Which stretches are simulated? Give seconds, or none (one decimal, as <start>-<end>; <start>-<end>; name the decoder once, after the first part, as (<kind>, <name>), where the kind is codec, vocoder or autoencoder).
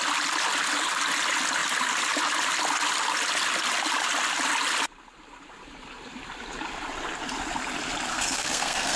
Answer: 8.1-9.0 (codec, SNAC)